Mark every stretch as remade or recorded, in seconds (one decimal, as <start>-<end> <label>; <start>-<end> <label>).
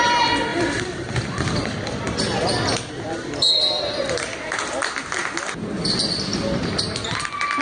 0.0-0.5 recorded; 0.5-2.2 remade; 2.2-7.6 recorded